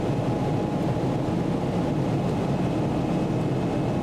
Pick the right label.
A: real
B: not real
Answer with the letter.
A